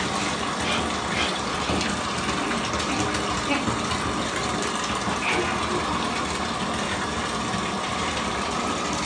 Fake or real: real